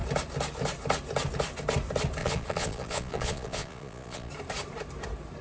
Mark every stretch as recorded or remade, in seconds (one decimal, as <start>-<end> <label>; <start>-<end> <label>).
0.0-2.2 recorded; 2.2-4.3 remade; 4.3-5.4 recorded